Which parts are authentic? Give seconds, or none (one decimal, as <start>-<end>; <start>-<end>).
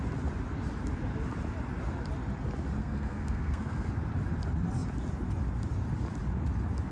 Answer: 0.0-2.8; 3.9-6.9